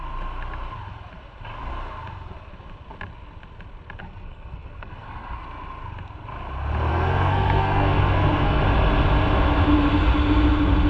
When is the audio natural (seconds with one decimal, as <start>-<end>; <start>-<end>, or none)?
0.0-4.0; 5.4-6.9; 8.6-10.9